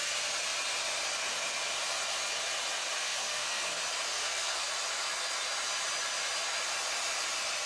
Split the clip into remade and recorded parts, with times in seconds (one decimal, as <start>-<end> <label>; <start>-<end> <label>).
0.0-3.0 recorded; 3.0-3.8 remade; 3.8-4.2 recorded; 4.2-4.7 remade; 4.7-7.7 recorded